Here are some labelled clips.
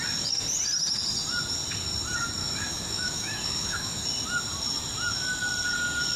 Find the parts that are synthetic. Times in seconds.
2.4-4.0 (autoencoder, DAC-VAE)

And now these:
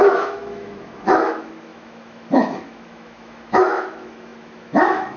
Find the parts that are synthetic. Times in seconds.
0.0-5.2 (autoencoder, DAC-VAE)

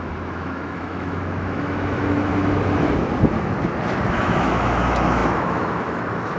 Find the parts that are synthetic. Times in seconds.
0.0-2.3 (autoencoder, DAC-VAE); 4.1-6.4

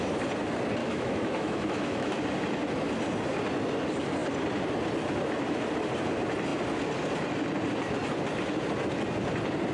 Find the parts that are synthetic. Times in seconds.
0.8-2.2 (autoencoder, DAC-VAE)

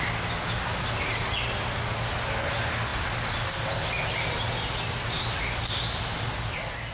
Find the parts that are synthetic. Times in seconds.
none

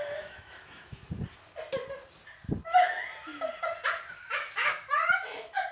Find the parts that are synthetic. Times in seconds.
0.0-1.0 (autoencoder, DAC-VAE); 4.1-5.7

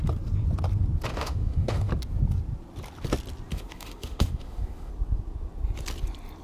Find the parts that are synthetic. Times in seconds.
1.1-1.9 (autoencoder, DAC-VAE); 3.5-4.9

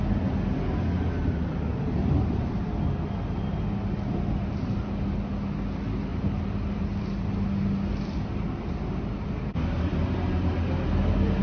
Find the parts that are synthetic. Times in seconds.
none